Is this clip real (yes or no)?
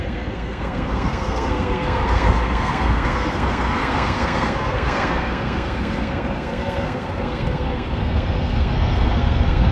no